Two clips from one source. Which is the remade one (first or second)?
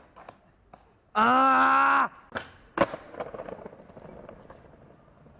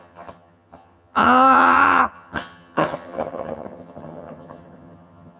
second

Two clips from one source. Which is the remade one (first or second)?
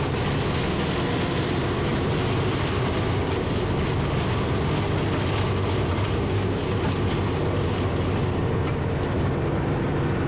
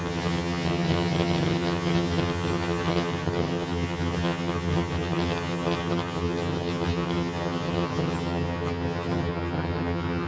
second